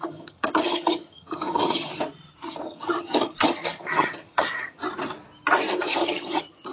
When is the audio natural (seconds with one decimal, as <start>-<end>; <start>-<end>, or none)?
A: 1.9-2.7; 4.8-5.8